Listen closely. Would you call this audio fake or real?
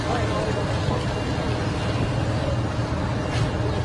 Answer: real